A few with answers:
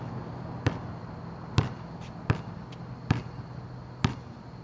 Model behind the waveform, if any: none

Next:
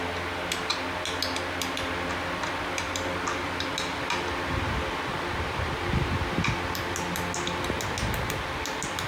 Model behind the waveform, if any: none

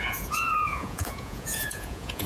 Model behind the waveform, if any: vocoder, Vocos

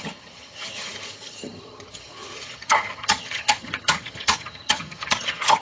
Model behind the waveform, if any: vocoder, HiFi-GAN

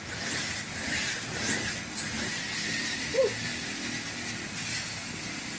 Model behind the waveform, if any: none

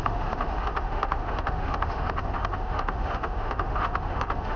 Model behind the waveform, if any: autoencoder, DAC-VAE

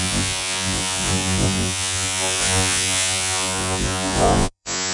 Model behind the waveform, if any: vocoder, Vocos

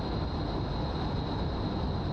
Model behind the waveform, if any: none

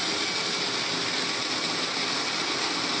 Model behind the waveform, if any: none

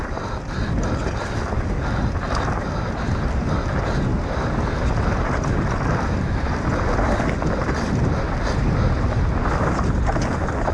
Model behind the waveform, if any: none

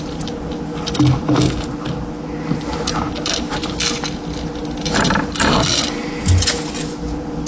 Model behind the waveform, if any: none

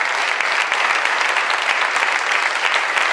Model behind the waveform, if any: none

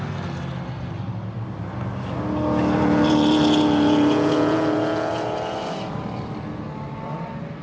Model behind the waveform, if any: none